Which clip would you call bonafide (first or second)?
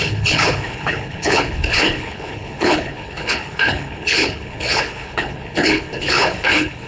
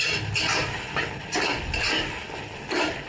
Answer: second